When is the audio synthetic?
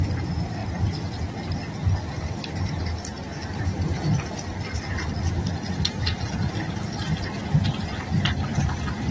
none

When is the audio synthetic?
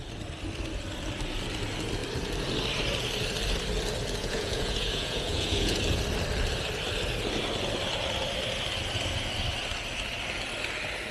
4.2-5.8 (vocoder, Vocos)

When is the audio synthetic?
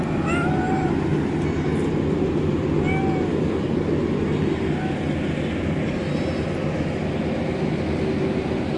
3.3-3.9 (codec, DAC)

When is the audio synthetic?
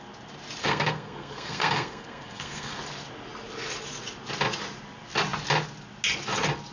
0.6-2.8 (codec, SNAC)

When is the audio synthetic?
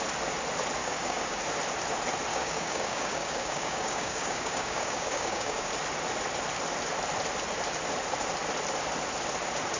0.8-1.4 (codec, DAC); 2.3-5.7